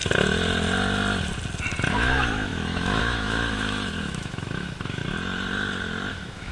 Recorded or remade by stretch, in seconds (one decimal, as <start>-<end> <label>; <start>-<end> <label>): 0.0-1.9 recorded; 1.9-5.0 remade; 5.0-6.1 recorded; 6.1-6.5 remade